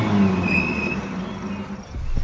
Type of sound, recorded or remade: recorded